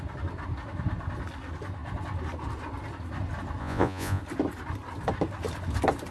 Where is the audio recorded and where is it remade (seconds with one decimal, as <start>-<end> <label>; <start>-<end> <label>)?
0.0-3.6 recorded; 3.6-4.2 remade; 4.2-6.1 recorded